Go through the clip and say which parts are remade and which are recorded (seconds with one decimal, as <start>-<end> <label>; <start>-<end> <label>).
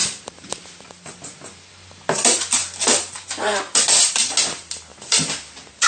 0.0-2.6 recorded; 2.6-3.6 remade; 3.6-4.9 recorded; 4.9-5.9 remade